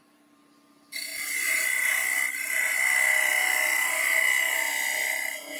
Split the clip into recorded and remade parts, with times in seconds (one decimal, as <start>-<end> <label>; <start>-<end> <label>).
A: 0.0-5.6 remade